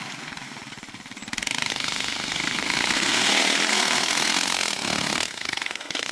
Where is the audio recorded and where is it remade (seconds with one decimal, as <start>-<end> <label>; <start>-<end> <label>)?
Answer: 0.0-1.7 recorded; 1.7-3.3 remade; 3.3-3.7 recorded; 3.7-6.1 remade